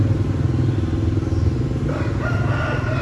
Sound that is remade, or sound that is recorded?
recorded